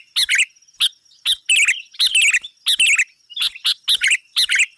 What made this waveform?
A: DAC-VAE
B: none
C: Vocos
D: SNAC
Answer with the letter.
B